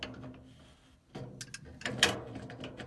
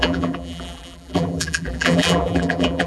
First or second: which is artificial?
second